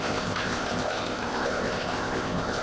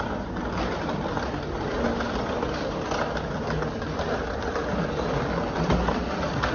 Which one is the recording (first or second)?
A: second